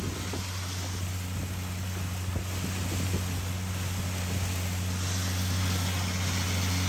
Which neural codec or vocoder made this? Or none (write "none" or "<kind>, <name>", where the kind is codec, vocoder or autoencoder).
none